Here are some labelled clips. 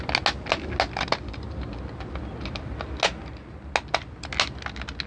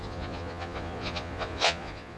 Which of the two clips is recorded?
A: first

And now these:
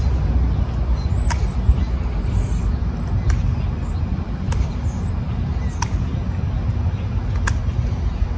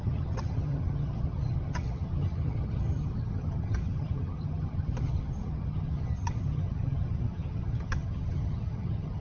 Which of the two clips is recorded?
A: first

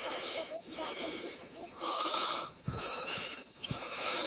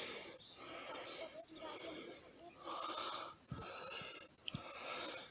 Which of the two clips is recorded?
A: second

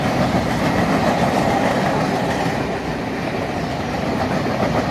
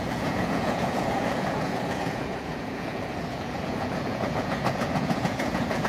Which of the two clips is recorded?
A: first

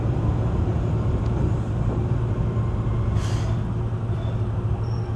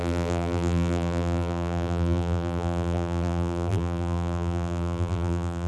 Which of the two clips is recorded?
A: first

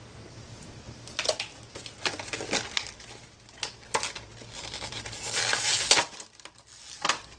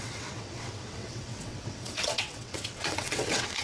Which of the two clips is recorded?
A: first